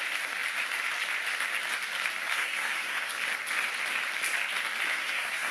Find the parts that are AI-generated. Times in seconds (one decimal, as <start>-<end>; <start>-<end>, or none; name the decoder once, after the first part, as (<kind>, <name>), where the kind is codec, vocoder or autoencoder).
2.3-3.1 (codec, SNAC); 4.9-5.5